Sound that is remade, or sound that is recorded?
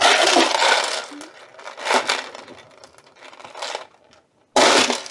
recorded